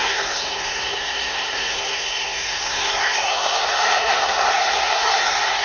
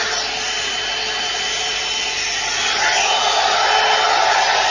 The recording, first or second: second